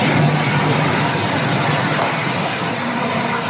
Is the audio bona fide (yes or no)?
yes